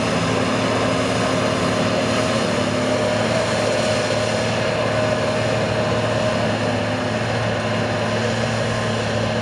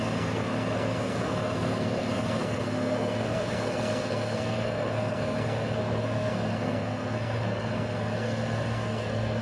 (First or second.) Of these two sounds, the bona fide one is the first